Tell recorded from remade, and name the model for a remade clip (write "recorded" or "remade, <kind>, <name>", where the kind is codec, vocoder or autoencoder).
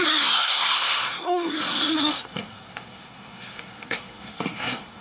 remade, codec, SNAC